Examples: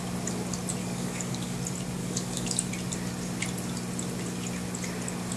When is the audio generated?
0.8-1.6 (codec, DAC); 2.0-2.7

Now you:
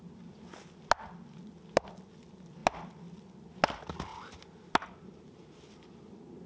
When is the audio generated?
none